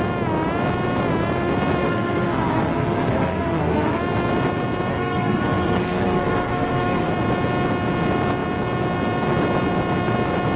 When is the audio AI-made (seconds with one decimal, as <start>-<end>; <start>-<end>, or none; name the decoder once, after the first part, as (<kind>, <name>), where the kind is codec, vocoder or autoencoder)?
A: 1.8-4.0 (codec, SNAC); 4.9-7.1

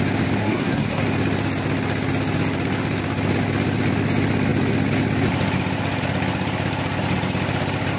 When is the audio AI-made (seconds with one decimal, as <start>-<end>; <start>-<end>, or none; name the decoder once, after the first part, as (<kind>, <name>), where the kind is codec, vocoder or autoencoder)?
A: 0.4-1.0 (codec, SNAC)

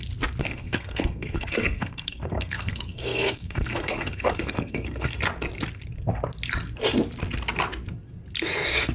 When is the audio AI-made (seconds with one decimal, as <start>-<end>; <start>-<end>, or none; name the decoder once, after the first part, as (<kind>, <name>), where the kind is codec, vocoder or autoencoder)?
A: 0.4-5.2 (codec, SNAC)

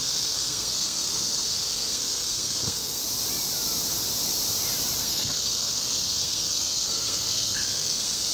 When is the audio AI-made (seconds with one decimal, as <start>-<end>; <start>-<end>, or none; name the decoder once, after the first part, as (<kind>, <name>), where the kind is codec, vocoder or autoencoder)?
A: 0.0-3.0 (codec, SNAC); 5.0-8.3